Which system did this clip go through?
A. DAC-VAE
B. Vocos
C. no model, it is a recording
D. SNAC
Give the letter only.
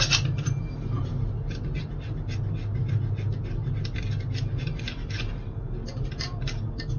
C